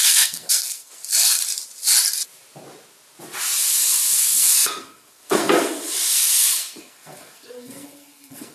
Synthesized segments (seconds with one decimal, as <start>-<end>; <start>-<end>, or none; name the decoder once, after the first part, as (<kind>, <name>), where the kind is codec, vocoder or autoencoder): 0.0-1.4 (codec, SNAC); 3.6-8.5